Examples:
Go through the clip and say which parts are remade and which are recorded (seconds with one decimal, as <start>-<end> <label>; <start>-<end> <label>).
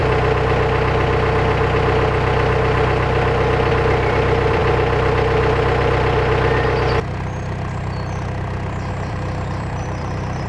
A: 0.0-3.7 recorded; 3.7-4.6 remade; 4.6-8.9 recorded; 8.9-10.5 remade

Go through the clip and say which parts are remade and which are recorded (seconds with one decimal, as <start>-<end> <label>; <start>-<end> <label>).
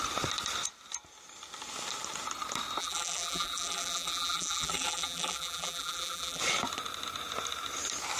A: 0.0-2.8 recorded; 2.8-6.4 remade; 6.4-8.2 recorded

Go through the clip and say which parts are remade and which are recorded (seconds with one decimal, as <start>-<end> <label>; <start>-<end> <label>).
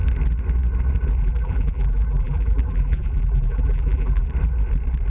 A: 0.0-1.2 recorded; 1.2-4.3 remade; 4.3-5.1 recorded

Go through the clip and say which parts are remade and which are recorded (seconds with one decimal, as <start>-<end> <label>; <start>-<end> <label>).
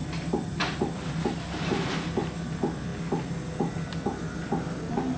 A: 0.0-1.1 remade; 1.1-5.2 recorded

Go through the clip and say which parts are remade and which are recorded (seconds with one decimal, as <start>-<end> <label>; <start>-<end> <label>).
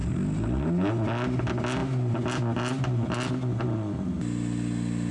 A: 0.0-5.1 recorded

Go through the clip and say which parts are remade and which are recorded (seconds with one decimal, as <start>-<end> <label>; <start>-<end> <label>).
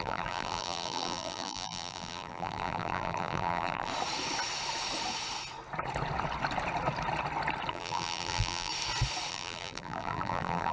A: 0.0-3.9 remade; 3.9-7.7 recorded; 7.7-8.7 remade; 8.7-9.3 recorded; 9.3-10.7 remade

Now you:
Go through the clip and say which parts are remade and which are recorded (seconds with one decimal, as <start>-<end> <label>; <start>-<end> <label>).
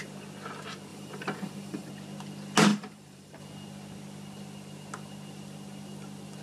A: 0.0-0.9 recorded; 0.9-1.9 remade; 1.9-2.7 recorded; 2.7-3.4 remade; 3.4-6.4 recorded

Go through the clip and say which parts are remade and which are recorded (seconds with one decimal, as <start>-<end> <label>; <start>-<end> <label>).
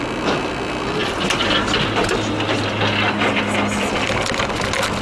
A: 0.0-5.0 recorded